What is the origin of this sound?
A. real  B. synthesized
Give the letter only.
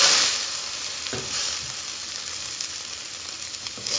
B